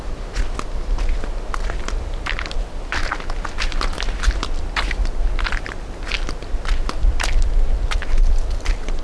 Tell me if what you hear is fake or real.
real